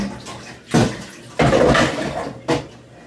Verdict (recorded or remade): recorded